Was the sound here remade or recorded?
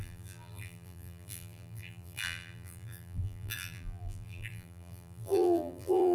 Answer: remade